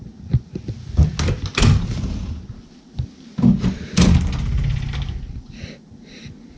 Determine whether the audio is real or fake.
real